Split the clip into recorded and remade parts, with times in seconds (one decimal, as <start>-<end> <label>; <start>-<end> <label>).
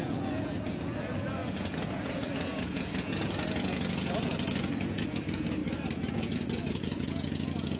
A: 0.0-5.6 remade; 5.6-6.1 recorded; 6.1-7.8 remade